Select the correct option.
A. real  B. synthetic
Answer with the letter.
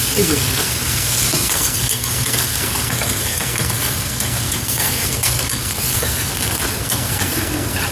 B